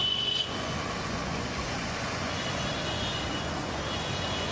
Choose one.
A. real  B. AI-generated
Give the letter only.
B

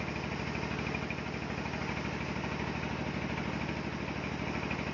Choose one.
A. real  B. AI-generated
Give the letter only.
A